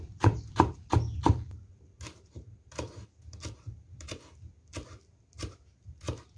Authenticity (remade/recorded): remade